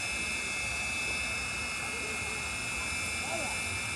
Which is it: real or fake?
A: real